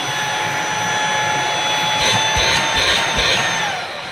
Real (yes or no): yes